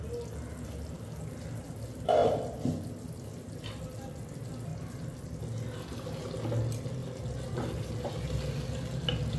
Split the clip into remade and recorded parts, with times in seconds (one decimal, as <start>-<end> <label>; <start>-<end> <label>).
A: 0.0-9.4 recorded